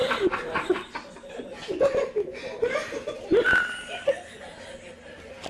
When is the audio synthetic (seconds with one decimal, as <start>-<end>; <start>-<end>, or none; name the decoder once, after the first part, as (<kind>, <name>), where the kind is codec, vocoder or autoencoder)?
0.0-0.7 (vocoder, BigVGAN v2)